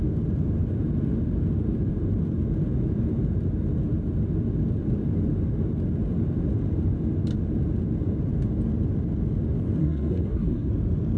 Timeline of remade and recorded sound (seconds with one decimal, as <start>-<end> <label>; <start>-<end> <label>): 0.0-9.8 recorded; 9.8-10.7 remade; 10.7-11.2 recorded